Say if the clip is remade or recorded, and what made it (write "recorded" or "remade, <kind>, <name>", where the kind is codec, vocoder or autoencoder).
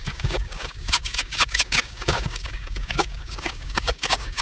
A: remade, codec, DAC